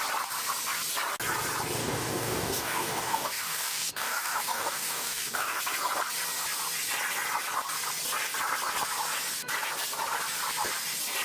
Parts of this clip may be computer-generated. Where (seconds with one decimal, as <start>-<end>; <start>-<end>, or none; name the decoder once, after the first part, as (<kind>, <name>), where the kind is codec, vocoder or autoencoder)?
1.8-5.6 (codec, DAC)